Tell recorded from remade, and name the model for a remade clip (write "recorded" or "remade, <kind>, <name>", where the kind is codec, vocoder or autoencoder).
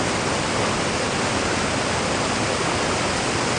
recorded